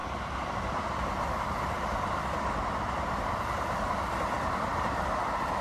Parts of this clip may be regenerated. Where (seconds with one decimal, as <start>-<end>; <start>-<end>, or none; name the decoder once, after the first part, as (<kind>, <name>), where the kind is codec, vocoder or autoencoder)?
none